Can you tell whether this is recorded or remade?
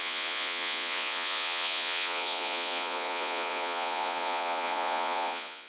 remade